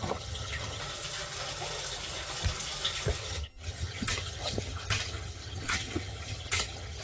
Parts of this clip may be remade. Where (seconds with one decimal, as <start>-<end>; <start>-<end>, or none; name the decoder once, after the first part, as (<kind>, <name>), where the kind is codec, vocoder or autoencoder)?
0.0-0.8 (vocoder, HiFi-GAN); 3.2-7.0